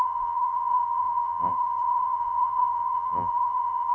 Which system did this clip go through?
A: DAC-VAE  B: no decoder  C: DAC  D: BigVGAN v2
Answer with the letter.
D